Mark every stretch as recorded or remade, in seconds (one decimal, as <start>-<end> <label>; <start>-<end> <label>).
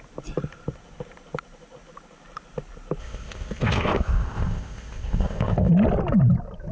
0.0-3.0 recorded; 3.0-5.7 remade; 5.7-6.7 recorded